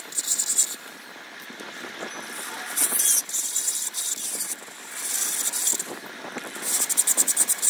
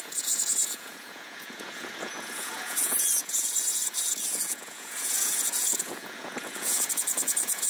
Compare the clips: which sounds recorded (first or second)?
first